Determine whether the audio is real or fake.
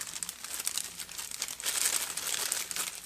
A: real